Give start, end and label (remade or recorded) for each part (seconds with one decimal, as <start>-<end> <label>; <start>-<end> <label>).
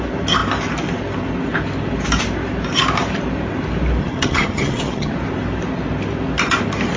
0.0-4.0 recorded; 4.0-5.1 remade; 5.1-7.0 recorded